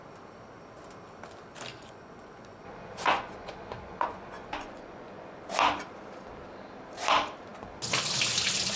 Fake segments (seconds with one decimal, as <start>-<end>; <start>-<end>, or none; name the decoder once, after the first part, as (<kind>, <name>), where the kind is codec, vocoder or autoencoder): 1.7-5.4 (vocoder, Vocos)